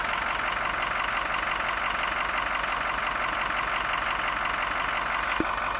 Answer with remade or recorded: recorded